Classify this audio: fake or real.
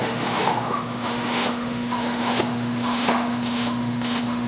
fake